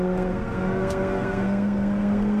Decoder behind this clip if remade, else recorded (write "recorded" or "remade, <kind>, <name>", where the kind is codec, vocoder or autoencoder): remade, codec, SNAC